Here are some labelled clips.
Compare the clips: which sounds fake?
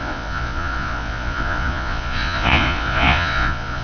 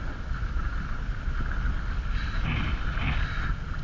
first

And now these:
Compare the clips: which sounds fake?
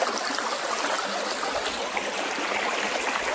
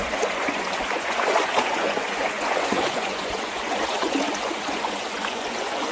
second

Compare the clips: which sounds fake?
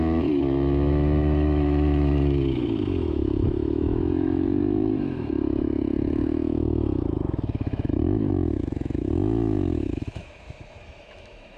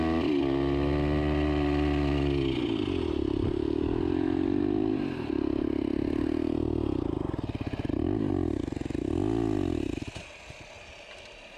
first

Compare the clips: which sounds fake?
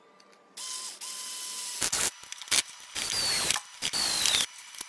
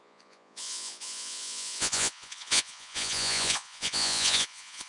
second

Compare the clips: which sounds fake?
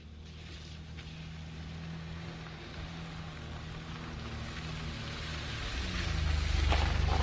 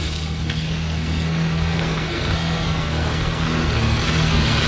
second